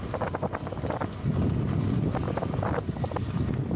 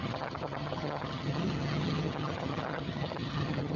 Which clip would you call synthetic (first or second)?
second